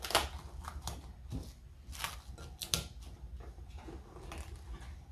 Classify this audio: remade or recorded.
recorded